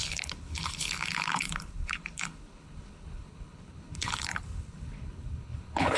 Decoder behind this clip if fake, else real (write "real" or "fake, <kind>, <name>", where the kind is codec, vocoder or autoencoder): fake, codec, HILCodec